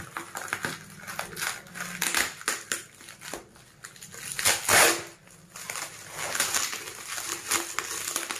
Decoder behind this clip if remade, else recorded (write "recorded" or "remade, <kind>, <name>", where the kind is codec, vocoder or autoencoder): recorded